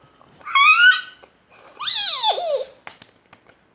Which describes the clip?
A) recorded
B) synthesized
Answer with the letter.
A